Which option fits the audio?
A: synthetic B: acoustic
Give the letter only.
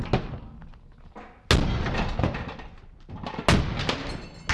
B